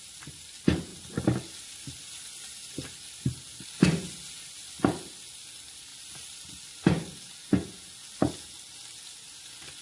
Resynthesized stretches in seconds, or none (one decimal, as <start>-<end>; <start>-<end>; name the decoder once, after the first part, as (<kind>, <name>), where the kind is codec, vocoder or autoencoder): none